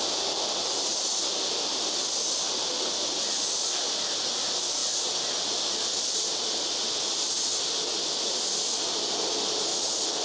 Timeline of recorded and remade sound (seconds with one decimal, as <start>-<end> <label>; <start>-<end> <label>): 0.0-10.2 recorded